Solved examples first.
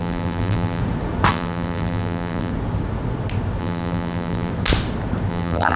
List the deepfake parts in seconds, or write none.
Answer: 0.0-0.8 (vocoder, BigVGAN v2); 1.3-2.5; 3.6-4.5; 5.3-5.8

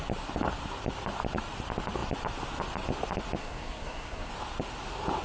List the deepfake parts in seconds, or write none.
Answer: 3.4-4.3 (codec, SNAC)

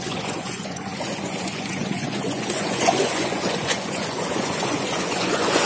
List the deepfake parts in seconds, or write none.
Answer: 0.0-5.7 (vocoder, Vocos)

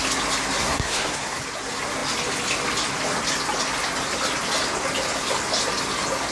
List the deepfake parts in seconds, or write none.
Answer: 0.6-1.4 (codec, SNAC)

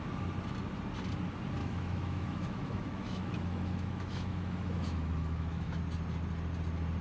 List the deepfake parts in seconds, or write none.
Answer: 1.6-5.8 (autoencoder, DAC-VAE)

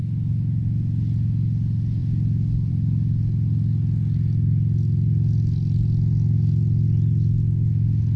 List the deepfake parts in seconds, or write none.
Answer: none

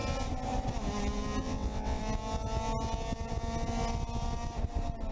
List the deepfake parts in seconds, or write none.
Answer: 1.4-2.0 (vocoder, WaveNeXt)

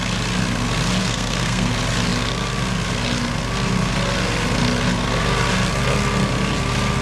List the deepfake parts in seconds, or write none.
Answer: 1.0-1.7 (codec, SNAC)